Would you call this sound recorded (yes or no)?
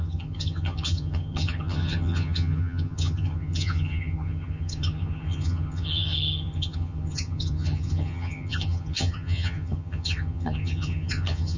no